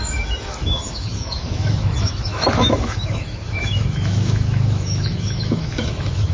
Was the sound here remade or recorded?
remade